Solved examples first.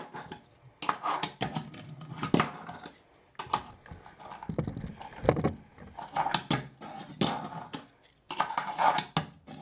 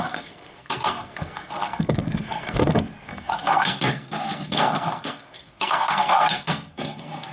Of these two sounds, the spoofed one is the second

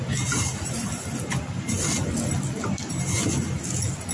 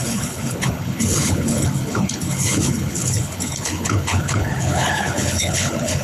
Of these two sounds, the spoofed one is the second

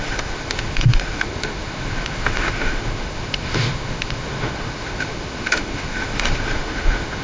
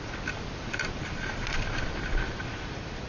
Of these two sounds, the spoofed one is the first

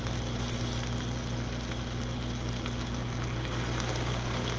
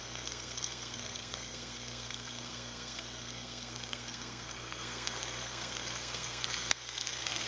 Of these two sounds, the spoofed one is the second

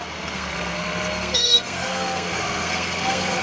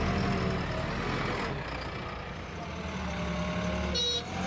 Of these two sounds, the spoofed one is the first